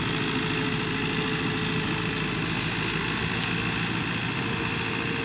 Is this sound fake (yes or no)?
no